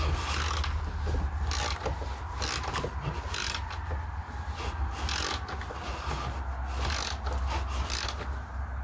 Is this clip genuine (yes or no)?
yes